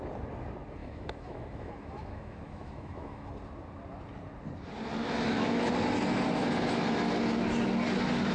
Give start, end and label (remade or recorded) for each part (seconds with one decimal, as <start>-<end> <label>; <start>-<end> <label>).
0.0-0.8 recorded; 0.8-3.3 remade; 3.3-5.0 recorded; 5.0-5.7 remade; 5.7-8.3 recorded